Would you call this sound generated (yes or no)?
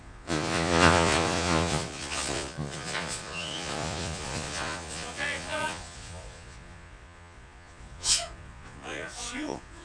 yes